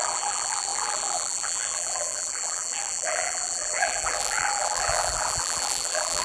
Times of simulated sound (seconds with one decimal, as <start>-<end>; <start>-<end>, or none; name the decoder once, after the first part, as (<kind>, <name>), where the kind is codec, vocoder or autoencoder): 0.0-6.2 (vocoder, BigVGAN v2)